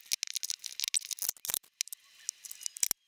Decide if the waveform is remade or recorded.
recorded